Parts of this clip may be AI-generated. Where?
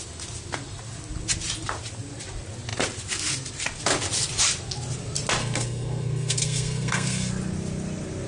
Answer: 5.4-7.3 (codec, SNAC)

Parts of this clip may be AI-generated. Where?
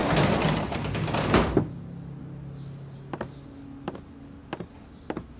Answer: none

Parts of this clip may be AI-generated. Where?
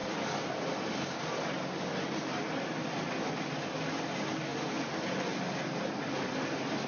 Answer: none